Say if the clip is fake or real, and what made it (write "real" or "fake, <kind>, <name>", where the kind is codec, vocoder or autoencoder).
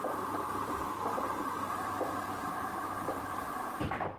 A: fake, vocoder, BigVGAN v2